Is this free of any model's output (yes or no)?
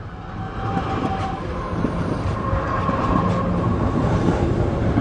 no